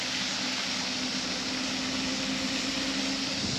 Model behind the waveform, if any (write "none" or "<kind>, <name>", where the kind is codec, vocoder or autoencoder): none